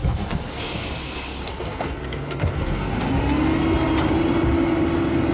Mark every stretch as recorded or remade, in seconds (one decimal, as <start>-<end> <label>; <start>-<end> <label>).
0.0-2.9 remade; 2.9-5.3 recorded